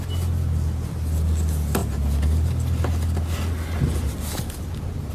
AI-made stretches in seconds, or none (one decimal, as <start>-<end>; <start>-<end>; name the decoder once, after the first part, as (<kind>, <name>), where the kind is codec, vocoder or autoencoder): none